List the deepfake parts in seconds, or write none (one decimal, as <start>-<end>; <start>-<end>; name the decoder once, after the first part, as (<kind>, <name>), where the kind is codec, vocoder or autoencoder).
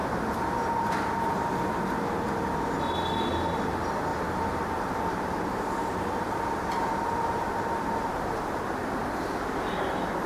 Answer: 0.0-1.3 (vocoder, BigVGAN v2); 4.1-9.1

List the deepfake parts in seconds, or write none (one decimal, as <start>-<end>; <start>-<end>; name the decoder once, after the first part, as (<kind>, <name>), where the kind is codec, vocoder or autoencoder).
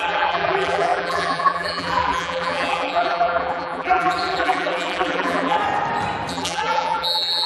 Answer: 0.0-5.6 (vocoder, BigVGAN v2); 6.3-7.5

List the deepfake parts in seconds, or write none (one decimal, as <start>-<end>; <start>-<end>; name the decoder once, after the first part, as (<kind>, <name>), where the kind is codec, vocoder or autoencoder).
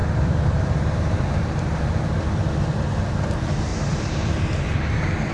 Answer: 0.0-1.8 (vocoder, BigVGAN v2); 3.7-5.3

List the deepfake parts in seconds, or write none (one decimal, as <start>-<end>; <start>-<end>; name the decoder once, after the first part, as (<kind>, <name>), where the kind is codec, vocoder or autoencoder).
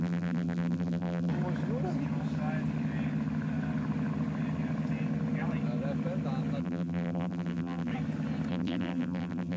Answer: 0.0-1.3 (vocoder, BigVGAN v2); 6.6-7.9; 8.5-9.6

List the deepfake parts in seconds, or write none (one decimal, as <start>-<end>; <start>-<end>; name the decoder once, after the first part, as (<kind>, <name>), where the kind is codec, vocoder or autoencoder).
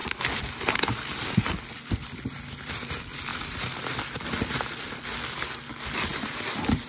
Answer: 0.0-2.7 (vocoder, BigVGAN v2); 3.3-4.0; 6.1-6.9